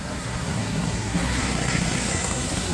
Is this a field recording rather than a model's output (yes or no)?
no